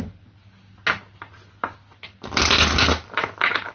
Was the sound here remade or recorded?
recorded